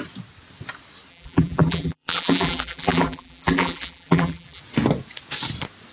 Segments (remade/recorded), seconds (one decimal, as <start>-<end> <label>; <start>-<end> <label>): 0.0-1.1 recorded; 1.1-4.6 remade; 4.6-5.9 recorded